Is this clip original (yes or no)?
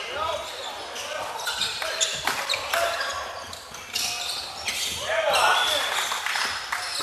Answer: yes